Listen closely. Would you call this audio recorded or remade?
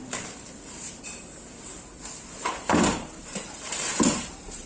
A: remade